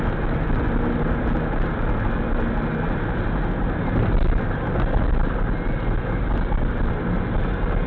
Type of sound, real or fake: real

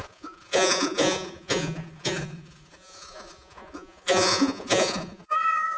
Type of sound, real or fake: fake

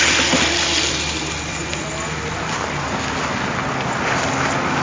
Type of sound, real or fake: real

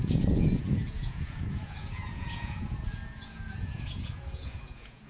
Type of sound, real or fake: fake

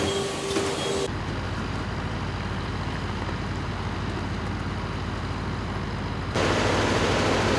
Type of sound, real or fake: real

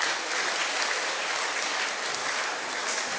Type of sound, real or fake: real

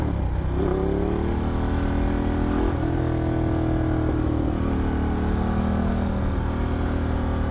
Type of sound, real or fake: real